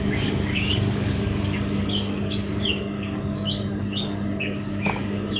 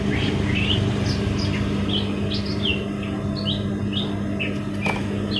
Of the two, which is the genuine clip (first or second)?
second